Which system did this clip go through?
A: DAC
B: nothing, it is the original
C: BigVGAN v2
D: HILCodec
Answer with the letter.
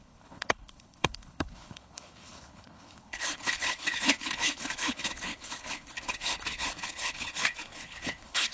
D